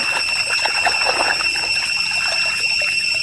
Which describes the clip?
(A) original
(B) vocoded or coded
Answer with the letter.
A